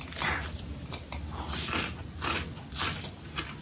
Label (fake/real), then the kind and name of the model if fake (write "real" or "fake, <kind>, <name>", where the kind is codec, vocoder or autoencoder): real